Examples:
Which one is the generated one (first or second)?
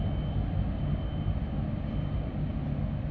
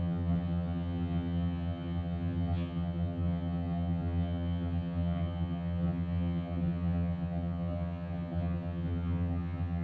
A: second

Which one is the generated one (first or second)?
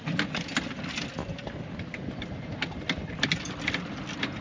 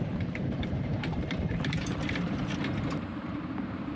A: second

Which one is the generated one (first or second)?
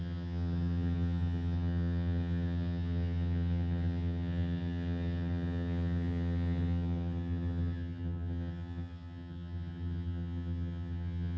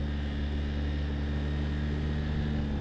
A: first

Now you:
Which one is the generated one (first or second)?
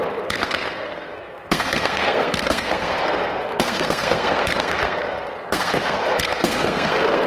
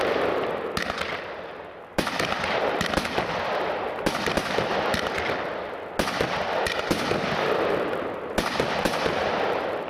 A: first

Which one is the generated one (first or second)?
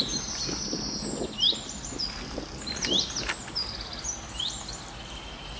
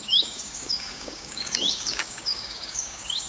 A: second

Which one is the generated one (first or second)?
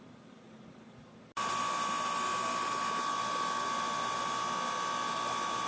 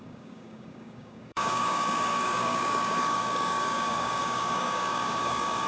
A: second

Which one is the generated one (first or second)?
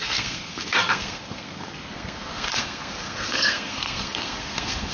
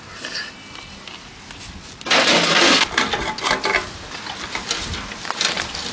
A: first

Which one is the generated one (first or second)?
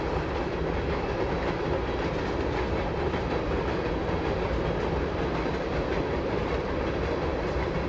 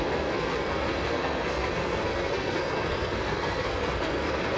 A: second